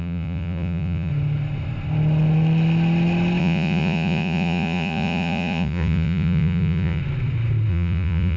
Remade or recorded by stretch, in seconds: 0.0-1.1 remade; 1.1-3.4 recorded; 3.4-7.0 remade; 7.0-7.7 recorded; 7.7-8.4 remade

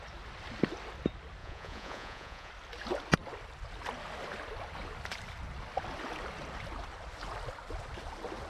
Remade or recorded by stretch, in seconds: 0.0-1.4 recorded; 1.4-2.5 remade; 2.5-8.5 recorded

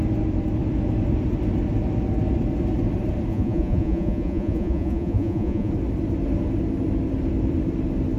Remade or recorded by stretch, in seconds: 0.0-3.3 recorded; 3.3-5.7 remade; 5.7-8.2 recorded